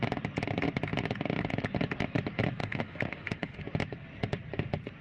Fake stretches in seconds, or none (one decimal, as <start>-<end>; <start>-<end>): 2.6-3.6